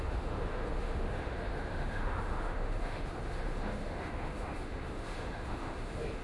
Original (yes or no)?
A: no